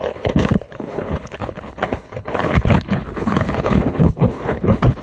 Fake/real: fake